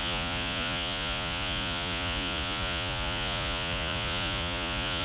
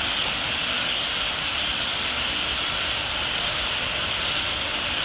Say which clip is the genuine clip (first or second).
second